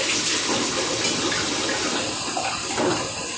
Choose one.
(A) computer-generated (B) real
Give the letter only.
B